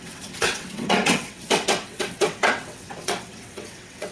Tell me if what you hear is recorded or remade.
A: remade